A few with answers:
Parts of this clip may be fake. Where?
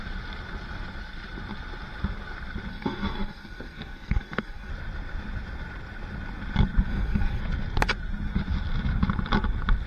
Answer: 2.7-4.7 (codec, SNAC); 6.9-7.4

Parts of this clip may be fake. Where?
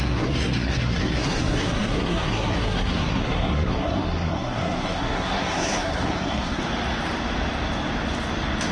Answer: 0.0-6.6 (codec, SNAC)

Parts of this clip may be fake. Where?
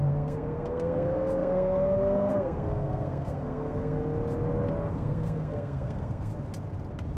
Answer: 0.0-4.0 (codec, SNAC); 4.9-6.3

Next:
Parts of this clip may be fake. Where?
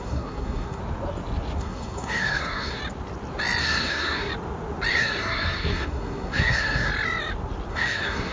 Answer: 0.0-0.8 (codec, SNAC); 1.6-2.8; 3.6-4.3; 4.9-6.9; 7.7-8.3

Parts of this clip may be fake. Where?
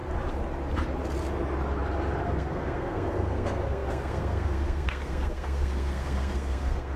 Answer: 2.2-7.0 (codec, SNAC)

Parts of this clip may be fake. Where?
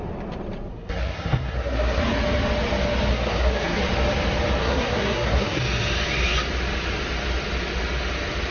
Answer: 0.7-2.0 (codec, SNAC); 3.1-3.8; 4.6-5.6